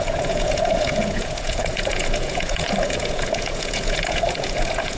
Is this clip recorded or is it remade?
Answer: remade